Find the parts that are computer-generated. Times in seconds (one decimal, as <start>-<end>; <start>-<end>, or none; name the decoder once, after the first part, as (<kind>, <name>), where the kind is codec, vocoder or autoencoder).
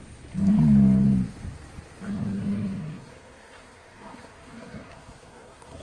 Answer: 2.1-5.8 (codec, SNAC)